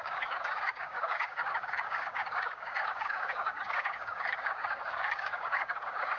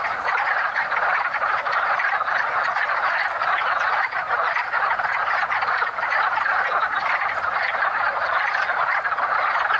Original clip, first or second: second